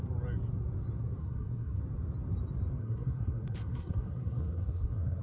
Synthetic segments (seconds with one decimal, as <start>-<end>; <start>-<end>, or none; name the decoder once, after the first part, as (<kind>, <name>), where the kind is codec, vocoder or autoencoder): 1.2-1.8 (codec, SNAC); 2.8-5.2